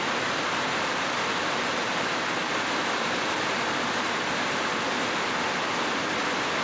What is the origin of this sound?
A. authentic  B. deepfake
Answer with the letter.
A